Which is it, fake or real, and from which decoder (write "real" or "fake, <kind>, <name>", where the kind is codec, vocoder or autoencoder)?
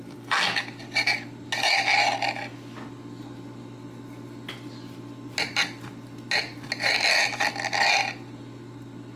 real